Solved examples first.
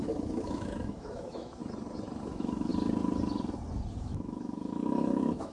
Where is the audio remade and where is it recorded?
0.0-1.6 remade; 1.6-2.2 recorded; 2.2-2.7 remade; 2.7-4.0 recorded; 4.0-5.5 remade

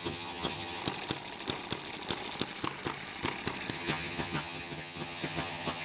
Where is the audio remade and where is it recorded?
0.0-0.8 remade; 0.8-3.7 recorded; 3.7-5.8 remade

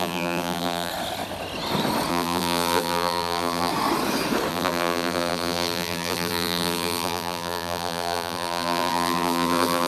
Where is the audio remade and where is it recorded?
0.0-0.9 remade; 0.9-2.1 recorded; 2.1-3.7 remade; 3.7-4.5 recorded; 4.5-9.9 remade

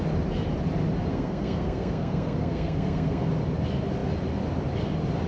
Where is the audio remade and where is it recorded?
0.0-1.1 recorded; 1.1-3.3 remade; 3.3-5.3 recorded

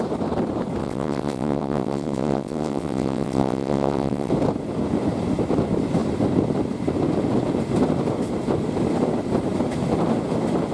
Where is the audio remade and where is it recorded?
0.0-0.8 recorded; 0.8-4.3 remade; 4.3-10.7 recorded